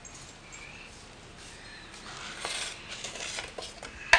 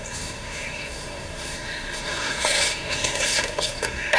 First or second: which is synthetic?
second